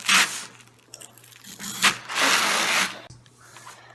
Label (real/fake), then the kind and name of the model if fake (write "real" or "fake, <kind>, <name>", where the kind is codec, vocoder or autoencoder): real